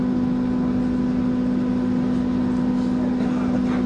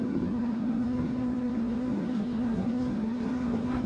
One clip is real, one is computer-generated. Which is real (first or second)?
first